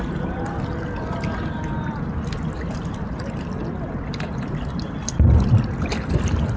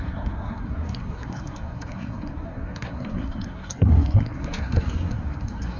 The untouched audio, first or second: first